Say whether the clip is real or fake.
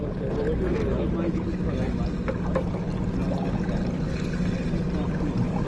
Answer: real